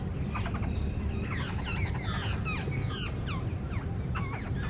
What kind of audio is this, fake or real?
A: real